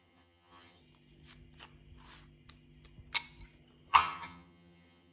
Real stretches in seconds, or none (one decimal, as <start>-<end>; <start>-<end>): 0.8-3.9